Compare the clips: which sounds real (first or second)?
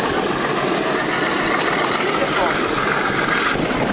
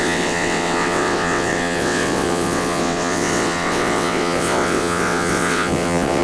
first